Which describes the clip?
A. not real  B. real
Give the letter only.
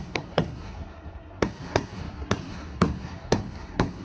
A